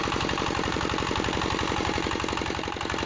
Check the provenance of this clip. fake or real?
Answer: real